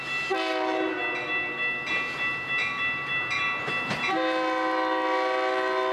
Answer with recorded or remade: recorded